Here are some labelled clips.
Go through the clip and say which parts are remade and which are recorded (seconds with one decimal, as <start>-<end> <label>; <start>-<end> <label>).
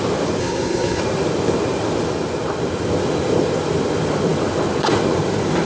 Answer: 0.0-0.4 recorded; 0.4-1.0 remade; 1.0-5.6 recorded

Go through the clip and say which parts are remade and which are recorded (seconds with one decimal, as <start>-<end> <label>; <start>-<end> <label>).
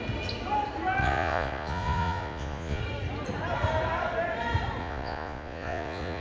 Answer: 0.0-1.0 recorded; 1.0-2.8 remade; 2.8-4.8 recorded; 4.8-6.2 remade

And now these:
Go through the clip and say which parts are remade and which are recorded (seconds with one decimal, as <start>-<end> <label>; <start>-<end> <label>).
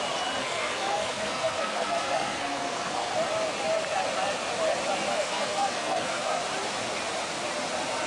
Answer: 0.0-0.4 recorded; 0.4-3.1 remade; 3.1-5.1 recorded; 5.1-6.4 remade; 6.4-8.1 recorded